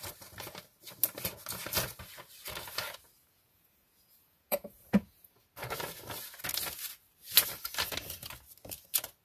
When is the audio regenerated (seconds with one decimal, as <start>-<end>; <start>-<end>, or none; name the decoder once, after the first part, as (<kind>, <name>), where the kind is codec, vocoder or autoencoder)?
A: 3.2-5.4 (vocoder, Vocos)